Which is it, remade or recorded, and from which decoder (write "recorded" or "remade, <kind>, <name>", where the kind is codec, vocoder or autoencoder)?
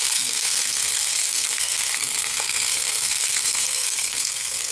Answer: remade, codec, SNAC